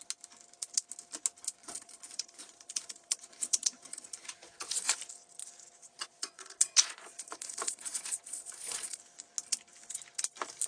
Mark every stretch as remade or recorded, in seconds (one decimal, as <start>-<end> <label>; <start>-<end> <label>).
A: 0.0-1.6 recorded; 1.6-5.0 remade; 5.0-5.8 recorded; 5.8-9.0 remade; 9.0-10.7 recorded